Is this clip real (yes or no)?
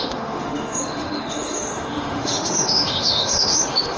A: no